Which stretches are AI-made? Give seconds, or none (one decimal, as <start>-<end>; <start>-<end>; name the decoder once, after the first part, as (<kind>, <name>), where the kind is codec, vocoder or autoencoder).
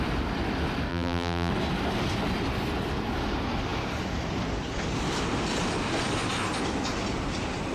0.9-1.5 (vocoder, BigVGAN v2)